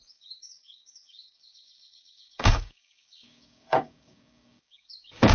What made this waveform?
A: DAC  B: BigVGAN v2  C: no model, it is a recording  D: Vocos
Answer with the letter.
A